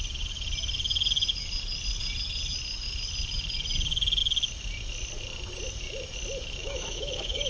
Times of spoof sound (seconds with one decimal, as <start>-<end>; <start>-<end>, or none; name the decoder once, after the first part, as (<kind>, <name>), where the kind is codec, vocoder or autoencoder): 6.6-7.5 (autoencoder, DAC-VAE)